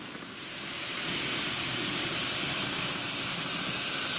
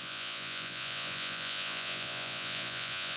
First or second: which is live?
first